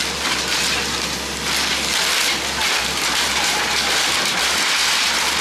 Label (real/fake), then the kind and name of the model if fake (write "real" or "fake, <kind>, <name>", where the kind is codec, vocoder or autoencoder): real